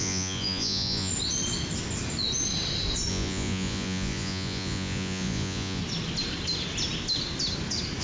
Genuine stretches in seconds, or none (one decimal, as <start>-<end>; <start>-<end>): 1.1-3.1; 5.8-8.0